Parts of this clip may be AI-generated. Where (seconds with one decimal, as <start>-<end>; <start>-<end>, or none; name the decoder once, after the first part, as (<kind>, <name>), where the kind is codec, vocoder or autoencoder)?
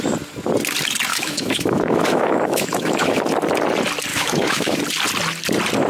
1.1-3.2 (autoencoder, DAC-VAE); 4.1-4.8